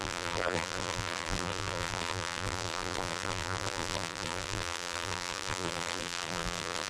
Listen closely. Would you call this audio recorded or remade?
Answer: remade